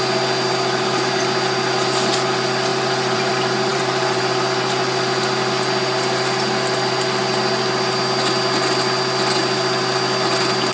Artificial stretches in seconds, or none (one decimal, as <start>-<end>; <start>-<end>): 2.7-3.3; 3.7-4.2